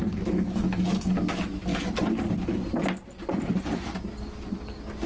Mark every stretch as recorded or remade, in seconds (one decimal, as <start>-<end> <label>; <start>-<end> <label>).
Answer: 0.0-1.7 remade; 1.7-5.1 recorded